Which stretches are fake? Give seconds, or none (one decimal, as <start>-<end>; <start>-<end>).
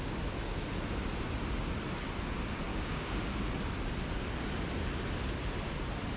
2.7-3.3